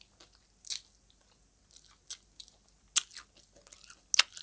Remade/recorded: recorded